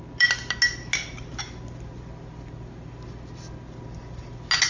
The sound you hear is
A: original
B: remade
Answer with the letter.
A